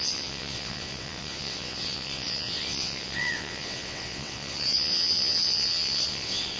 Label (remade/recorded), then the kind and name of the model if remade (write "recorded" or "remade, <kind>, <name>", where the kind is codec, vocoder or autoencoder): remade, vocoder, WaveNeXt